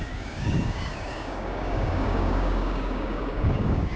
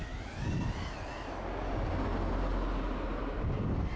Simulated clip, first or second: first